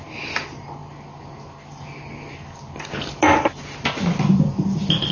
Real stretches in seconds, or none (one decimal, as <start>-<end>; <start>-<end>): 0.0-5.1